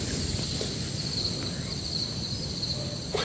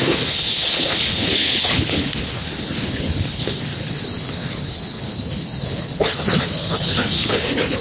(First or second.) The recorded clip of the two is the first